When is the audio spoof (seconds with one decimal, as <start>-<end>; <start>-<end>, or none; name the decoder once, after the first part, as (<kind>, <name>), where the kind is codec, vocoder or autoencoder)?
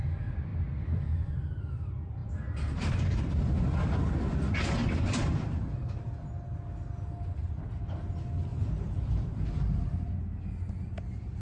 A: 2.2-3.3 (vocoder, BigVGAN v2); 4.8-6.0; 8.5-9.8